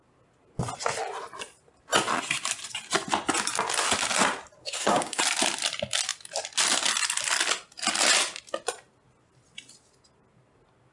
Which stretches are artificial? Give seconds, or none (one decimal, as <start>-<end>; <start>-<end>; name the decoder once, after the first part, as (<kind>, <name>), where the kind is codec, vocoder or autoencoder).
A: 4.6-5.2 (codec, SNAC)

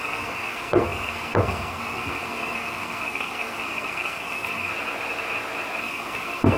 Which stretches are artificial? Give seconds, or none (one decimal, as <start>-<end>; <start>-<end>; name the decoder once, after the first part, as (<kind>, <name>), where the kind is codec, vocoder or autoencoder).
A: 0.0-4.7 (codec, SNAC); 5.8-6.6